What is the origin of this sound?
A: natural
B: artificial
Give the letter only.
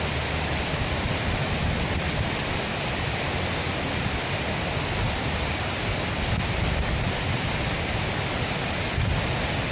A